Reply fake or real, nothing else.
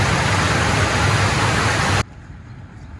real